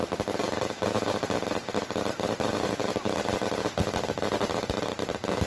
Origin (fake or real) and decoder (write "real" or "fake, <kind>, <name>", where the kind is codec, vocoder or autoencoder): real